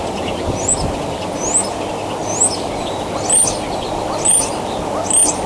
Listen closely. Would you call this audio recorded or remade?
recorded